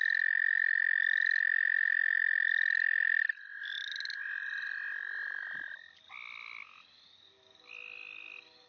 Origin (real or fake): real